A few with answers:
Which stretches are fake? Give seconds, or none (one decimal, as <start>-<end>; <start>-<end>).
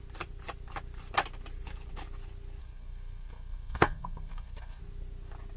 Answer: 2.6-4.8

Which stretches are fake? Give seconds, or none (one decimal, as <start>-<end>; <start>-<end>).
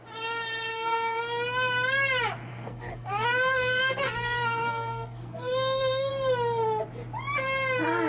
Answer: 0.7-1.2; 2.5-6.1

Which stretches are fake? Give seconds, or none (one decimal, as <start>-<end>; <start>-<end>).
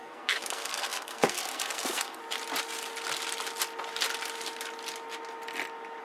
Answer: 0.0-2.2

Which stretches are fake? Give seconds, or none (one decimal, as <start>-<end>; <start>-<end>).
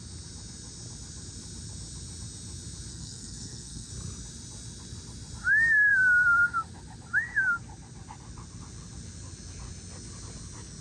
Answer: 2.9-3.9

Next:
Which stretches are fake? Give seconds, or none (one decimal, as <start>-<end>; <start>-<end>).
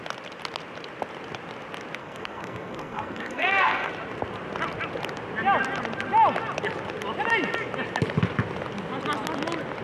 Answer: 2.0-3.9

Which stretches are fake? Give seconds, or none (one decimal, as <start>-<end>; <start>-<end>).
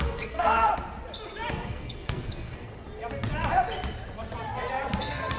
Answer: 0.0-0.7; 1.5-2.7; 5.0-5.4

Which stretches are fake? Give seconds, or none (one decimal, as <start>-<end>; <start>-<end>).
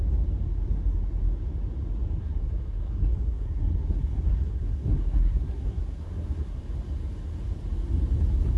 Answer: 2.2-6.6